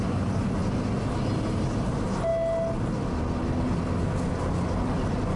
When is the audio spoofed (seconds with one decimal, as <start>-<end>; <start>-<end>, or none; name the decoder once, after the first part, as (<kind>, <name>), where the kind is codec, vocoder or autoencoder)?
none